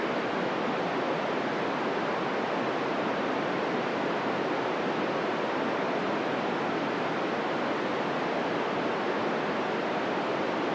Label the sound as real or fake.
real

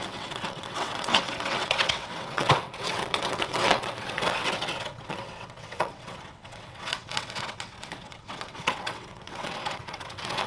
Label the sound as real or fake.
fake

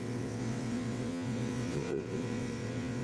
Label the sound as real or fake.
fake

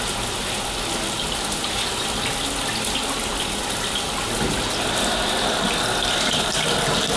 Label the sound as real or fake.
real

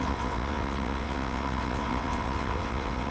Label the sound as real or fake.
fake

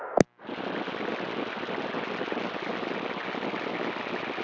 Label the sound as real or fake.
real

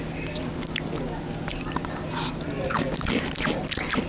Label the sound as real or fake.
real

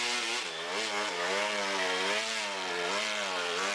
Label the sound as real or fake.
real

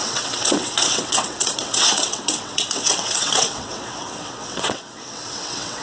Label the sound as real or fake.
fake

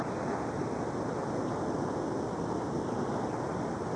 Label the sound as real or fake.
real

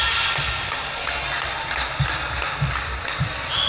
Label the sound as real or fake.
real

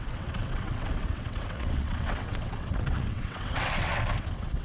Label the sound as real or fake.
fake